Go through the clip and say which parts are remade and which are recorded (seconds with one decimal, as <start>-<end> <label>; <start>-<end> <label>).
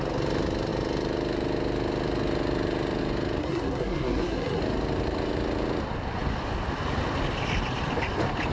0.0-3.4 recorded; 3.4-4.6 remade; 4.6-8.5 recorded